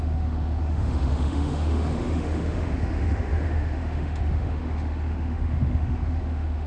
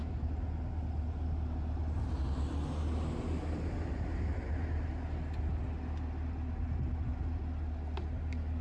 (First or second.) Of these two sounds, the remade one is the first